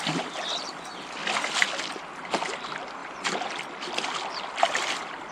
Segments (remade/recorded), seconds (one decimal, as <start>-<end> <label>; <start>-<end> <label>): 0.0-1.2 remade; 1.2-2.2 recorded; 2.2-5.3 remade